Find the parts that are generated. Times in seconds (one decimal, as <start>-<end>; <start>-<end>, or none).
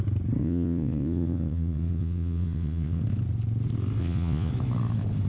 0.4-3.0; 4.0-4.5